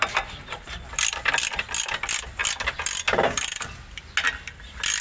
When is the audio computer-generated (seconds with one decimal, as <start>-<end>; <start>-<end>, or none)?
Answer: 0.0-1.3